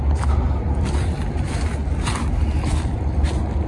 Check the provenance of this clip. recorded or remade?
recorded